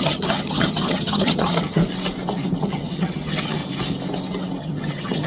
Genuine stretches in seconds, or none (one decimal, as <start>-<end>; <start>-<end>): 1.8-2.6; 3.6-4.6